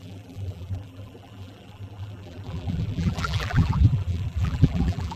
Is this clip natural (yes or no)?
no